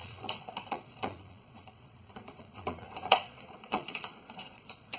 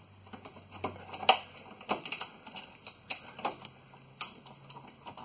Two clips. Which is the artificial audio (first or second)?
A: first